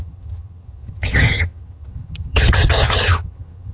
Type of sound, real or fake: fake